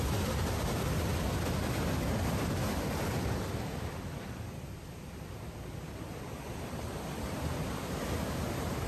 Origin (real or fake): real